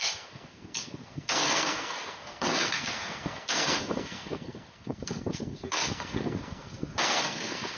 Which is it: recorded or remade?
remade